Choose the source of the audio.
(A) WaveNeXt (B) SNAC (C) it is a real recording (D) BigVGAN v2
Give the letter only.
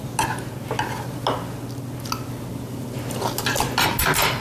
C